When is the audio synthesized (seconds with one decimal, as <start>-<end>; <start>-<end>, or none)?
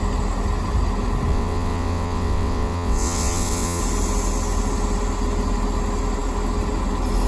1.3-3.8